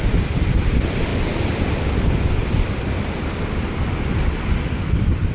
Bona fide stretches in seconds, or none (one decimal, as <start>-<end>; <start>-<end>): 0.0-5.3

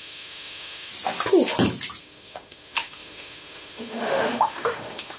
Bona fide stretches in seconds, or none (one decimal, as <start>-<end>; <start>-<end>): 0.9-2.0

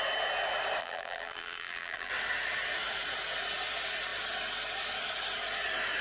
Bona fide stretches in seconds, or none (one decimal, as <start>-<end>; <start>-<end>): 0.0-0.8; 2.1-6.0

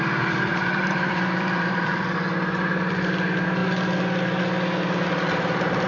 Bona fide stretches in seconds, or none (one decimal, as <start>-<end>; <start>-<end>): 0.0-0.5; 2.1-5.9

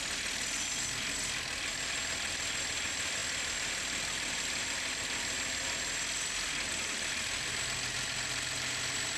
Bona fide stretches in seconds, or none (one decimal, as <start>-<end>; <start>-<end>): 0.0-9.2